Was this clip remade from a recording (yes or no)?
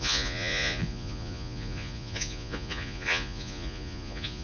yes